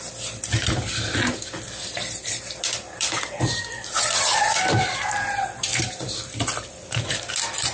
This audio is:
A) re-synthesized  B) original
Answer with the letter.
A